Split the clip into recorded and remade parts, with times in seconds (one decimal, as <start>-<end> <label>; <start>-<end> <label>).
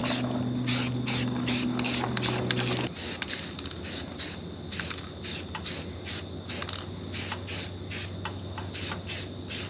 0.0-9.7 recorded